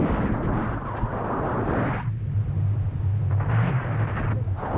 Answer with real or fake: real